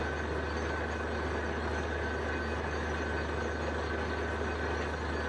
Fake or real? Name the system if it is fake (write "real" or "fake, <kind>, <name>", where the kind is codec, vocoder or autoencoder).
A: real